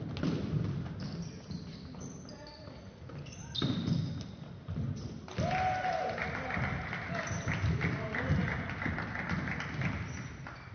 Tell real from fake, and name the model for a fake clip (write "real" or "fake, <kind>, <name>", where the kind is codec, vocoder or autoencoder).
real